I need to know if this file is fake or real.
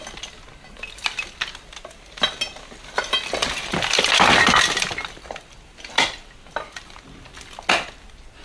real